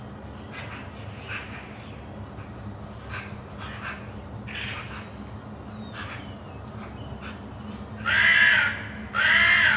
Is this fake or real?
real